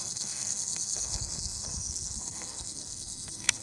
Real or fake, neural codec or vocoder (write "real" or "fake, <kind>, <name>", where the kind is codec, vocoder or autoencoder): fake, codec, SNAC